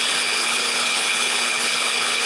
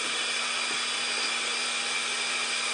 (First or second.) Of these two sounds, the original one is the second